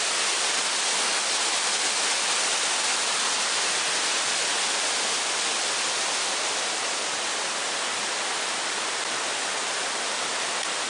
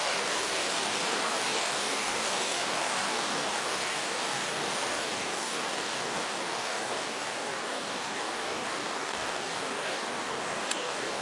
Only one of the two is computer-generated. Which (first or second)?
second